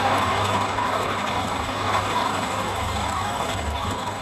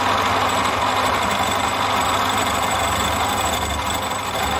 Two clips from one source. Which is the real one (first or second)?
second